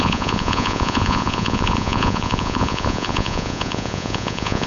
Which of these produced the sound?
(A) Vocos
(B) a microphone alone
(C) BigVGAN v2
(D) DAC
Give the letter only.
A